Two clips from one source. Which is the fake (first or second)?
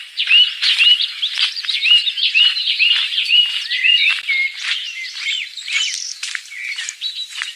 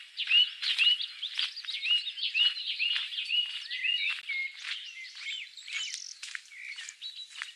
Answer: first